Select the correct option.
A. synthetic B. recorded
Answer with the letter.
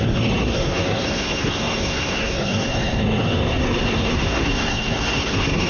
A